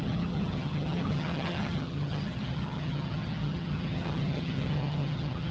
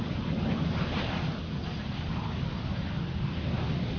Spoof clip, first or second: first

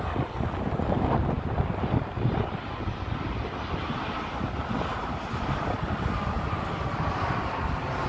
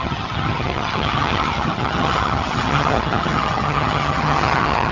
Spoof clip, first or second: second